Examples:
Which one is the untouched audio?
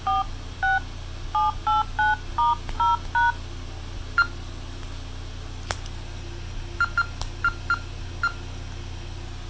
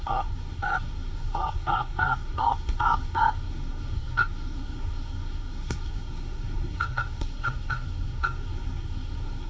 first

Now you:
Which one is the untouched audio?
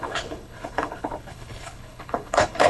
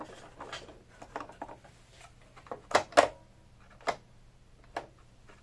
second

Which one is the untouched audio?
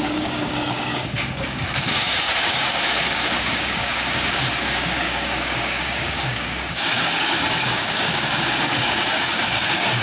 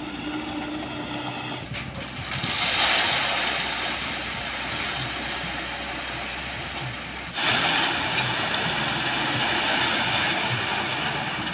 second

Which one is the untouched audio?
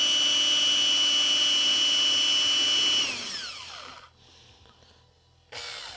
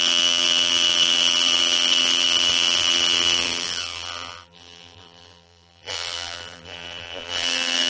first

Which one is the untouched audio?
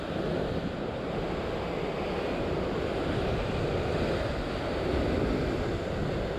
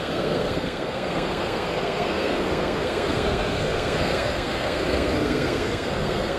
first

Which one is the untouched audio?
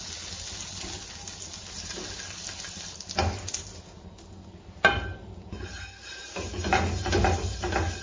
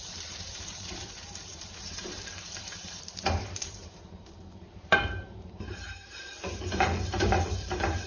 first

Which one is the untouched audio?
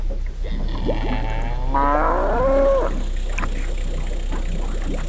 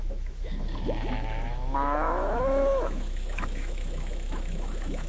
first